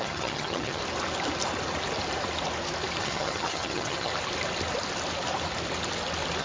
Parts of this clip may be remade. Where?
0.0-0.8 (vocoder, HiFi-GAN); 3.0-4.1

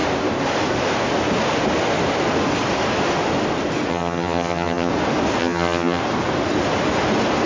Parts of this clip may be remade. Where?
3.9-4.9 (vocoder, HiFi-GAN); 5.4-6.0